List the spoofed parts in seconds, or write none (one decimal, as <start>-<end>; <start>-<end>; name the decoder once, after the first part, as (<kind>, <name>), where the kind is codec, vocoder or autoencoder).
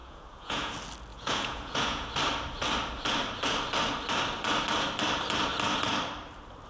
0.0-0.7 (vocoder, Vocos); 1.1-2.1